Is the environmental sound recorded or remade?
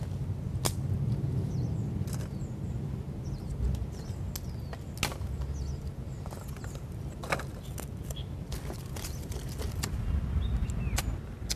recorded